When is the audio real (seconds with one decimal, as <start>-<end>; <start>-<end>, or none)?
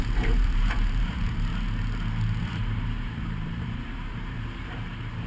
1.5-2.4